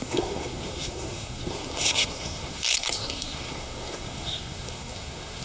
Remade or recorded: remade